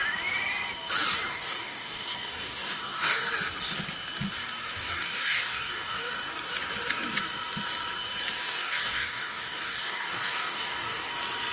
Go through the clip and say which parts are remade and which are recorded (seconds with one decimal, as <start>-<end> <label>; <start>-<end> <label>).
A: 0.0-1.3 recorded; 1.3-3.3 remade; 3.3-4.8 recorded; 4.8-6.1 remade; 6.1-8.4 recorded; 8.4-11.1 remade; 11.1-11.5 recorded